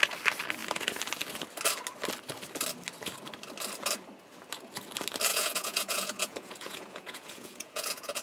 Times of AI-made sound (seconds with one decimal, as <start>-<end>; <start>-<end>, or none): 5.3-8.2